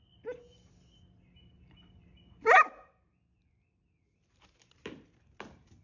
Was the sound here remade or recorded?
recorded